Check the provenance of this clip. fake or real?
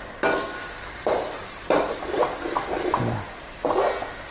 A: real